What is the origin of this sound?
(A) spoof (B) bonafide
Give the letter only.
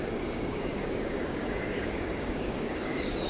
A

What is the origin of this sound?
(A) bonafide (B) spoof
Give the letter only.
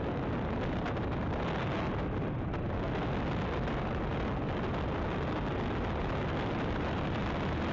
A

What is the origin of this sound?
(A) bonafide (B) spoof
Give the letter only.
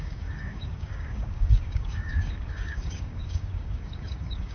B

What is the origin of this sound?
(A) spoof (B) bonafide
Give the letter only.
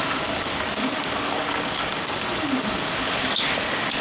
A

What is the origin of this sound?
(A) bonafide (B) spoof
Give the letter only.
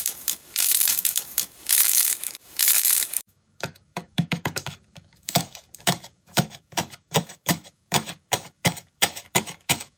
B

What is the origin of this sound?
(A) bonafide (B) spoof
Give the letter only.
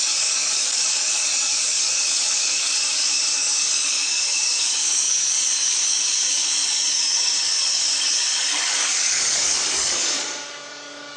B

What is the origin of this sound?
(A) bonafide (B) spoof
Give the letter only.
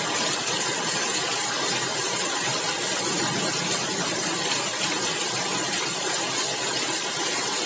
A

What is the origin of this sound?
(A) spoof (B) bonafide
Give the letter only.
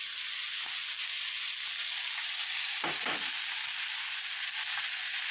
B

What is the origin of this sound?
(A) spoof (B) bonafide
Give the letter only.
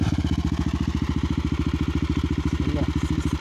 B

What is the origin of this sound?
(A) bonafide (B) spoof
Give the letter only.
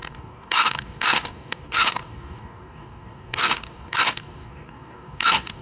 B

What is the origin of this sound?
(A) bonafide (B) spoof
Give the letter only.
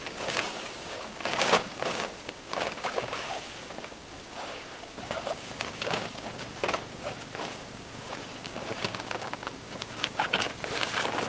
B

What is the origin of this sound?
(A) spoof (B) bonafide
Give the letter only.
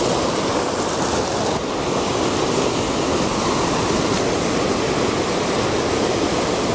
B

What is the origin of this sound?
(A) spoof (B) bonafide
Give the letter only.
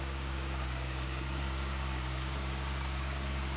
A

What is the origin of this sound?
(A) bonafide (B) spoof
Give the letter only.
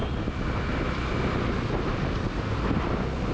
A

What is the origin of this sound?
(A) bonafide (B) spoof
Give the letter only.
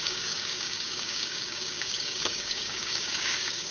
B